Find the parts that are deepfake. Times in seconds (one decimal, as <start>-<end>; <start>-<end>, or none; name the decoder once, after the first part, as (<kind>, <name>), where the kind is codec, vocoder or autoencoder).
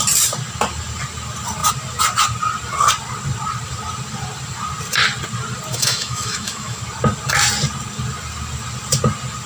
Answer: 5.7-6.8 (autoencoder, DAC-VAE)